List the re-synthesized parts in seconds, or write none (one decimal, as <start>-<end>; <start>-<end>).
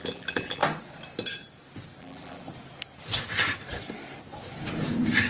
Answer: 0.0-0.6; 2.0-2.4